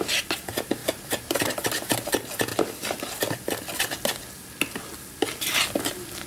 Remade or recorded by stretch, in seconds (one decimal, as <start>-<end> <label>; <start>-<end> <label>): 0.0-0.8 recorded; 0.8-2.1 remade; 2.1-6.3 recorded